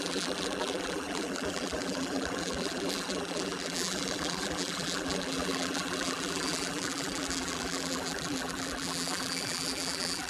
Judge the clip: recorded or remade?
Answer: remade